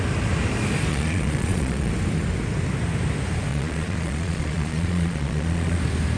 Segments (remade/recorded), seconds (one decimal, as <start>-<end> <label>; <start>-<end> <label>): 0.0-0.9 recorded; 0.9-1.9 remade; 1.9-3.5 recorded; 3.5-5.8 remade; 5.8-6.2 recorded